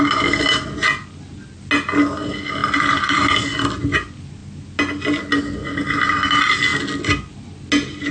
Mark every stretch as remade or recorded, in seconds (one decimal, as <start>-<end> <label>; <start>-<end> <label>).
0.0-8.1 recorded